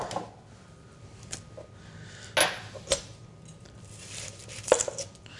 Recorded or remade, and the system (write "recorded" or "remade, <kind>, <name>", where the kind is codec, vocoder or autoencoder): recorded